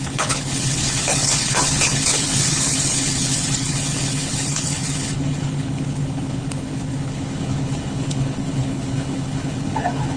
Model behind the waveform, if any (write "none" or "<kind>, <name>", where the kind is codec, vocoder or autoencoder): codec, HILCodec